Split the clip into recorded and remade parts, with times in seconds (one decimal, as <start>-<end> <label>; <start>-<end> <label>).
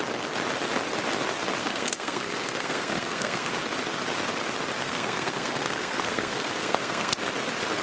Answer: 0.0-1.6 recorded; 1.6-3.5 remade; 3.5-4.8 recorded; 4.8-7.1 remade; 7.1-7.8 recorded